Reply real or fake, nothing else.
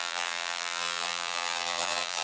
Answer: fake